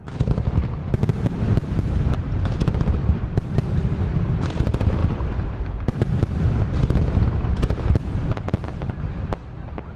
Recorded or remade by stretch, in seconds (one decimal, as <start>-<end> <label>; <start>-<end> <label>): 0.0-0.8 recorded; 0.8-1.8 remade; 1.8-3.0 recorded; 3.0-3.5 remade; 3.5-10.0 recorded